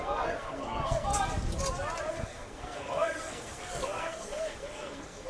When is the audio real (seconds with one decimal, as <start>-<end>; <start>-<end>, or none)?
1.1-2.1